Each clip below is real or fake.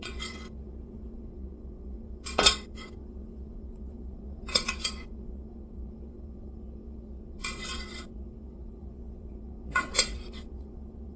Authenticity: fake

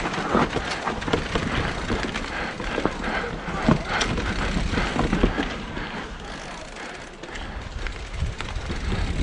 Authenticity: real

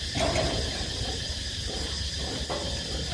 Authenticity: real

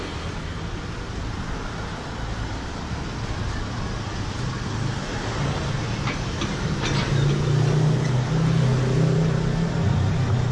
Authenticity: real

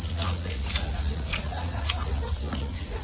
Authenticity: fake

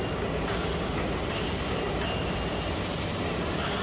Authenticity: real